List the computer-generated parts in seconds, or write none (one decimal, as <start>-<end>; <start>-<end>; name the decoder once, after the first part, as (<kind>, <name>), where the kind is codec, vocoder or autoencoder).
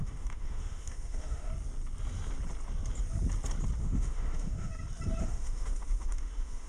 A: 0.0-1.5 (autoencoder, DAC-VAE); 3.8-4.7; 5.2-6.7